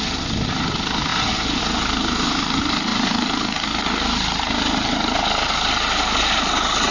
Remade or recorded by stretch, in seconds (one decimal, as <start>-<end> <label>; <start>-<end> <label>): 0.0-6.9 recorded